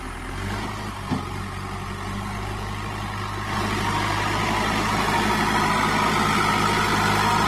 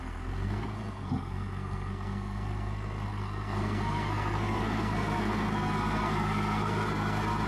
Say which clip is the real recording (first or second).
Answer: first